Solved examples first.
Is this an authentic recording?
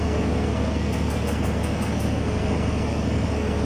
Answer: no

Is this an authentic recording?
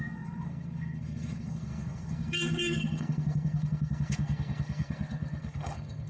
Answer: no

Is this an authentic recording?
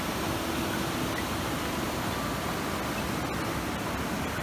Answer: yes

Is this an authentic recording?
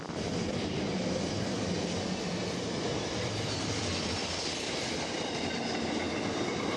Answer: yes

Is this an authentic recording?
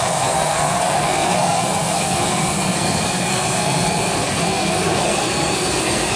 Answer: no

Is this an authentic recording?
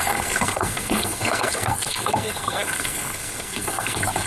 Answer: no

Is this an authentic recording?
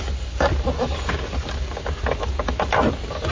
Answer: yes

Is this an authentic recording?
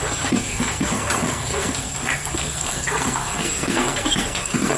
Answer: no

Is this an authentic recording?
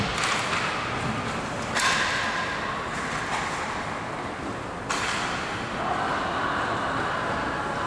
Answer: yes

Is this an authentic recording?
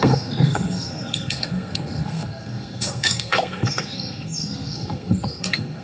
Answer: no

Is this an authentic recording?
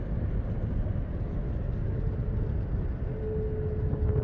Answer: yes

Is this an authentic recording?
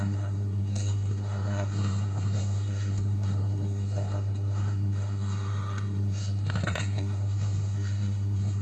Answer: no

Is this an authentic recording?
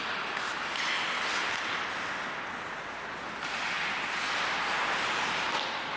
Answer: yes